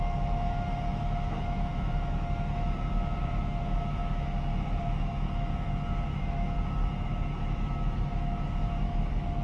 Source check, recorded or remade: remade